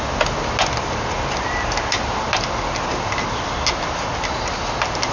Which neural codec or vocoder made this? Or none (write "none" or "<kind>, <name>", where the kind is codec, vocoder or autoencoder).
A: none